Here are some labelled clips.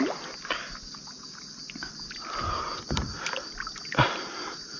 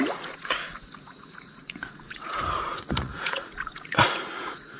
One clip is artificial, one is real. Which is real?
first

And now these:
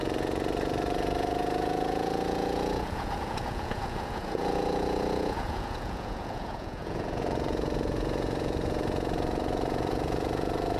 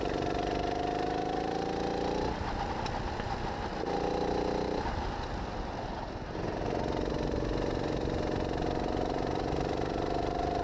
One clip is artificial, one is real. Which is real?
second